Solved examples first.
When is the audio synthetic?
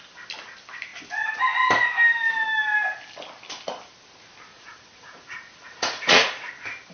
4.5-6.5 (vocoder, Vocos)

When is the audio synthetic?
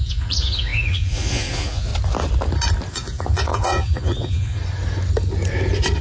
0.0-1.9 (vocoder, Vocos); 2.9-4.6